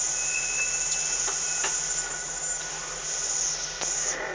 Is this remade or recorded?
recorded